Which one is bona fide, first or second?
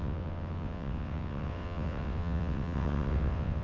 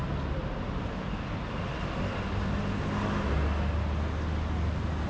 second